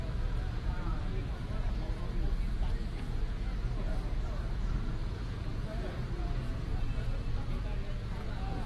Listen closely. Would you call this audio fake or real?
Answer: fake